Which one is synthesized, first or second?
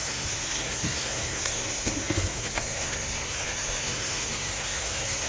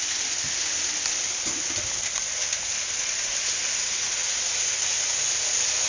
first